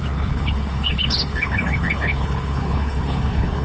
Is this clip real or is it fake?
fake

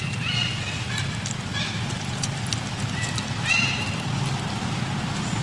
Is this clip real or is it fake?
real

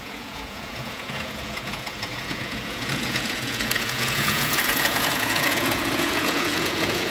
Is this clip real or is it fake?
fake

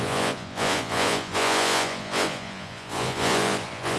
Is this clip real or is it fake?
fake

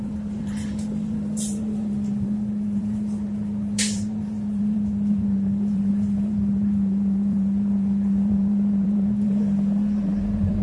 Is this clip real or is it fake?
fake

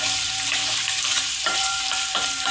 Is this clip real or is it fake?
fake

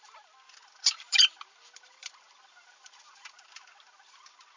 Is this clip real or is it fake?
fake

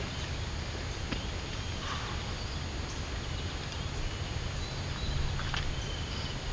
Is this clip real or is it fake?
real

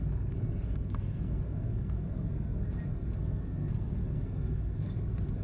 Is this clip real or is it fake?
fake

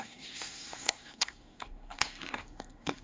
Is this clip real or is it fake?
fake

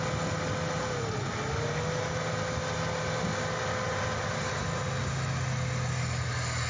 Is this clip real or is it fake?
real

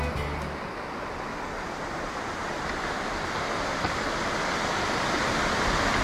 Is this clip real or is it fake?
real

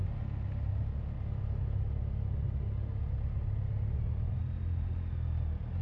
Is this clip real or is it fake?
real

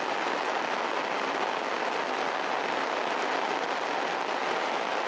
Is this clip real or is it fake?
real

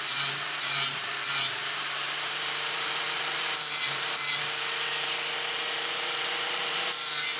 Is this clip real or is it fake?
fake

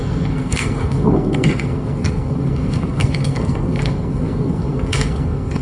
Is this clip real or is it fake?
fake